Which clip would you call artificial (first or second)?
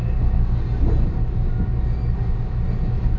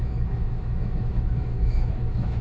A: second